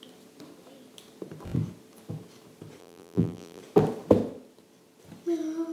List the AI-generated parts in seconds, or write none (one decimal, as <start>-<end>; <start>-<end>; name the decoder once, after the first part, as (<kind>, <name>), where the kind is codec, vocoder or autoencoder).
2.8-3.6 (vocoder, BigVGAN v2)